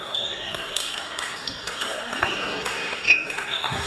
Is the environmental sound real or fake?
fake